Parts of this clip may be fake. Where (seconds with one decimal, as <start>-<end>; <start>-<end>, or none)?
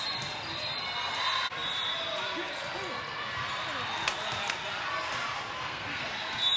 5.6-6.1